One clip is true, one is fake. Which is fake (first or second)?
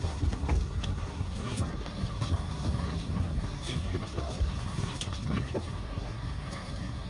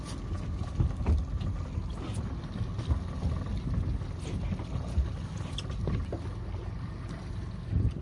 first